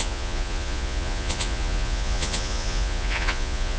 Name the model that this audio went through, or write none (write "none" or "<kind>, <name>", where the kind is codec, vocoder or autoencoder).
vocoder, Vocos